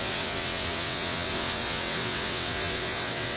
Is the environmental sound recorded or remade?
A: remade